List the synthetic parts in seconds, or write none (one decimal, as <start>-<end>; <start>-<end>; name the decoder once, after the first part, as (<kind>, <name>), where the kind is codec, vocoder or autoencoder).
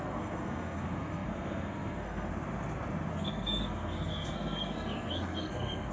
0.0-2.3 (codec, SNAC); 3.1-5.9